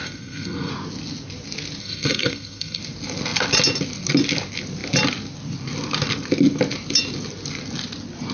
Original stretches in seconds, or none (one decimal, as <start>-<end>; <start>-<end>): 0.7-1.8; 2.8-8.3